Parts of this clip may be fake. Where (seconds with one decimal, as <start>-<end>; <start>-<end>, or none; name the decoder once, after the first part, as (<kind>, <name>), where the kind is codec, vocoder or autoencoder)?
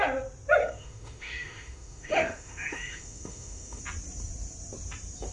0.6-3.8 (autoencoder, DAC-VAE)